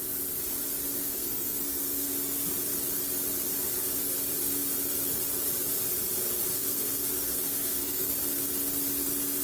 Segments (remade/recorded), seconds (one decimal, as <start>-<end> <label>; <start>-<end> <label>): 0.0-1.0 recorded; 1.0-2.1 remade; 2.1-6.5 recorded; 6.5-8.1 remade; 8.1-9.4 recorded